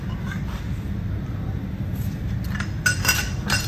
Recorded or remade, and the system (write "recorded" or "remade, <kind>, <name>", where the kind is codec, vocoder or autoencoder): recorded